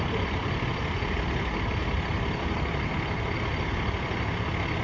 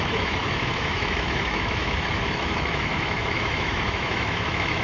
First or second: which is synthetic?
second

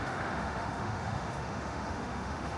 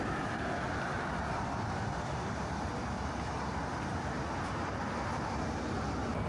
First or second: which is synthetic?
first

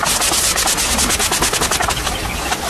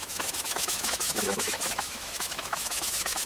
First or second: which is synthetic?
second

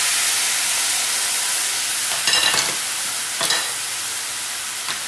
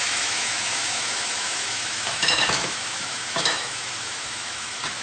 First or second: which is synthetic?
second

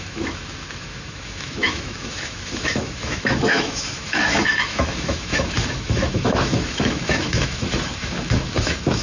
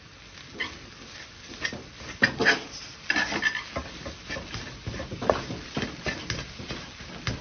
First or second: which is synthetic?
first